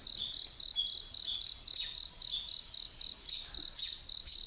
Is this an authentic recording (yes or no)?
yes